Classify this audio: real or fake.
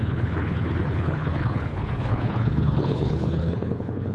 fake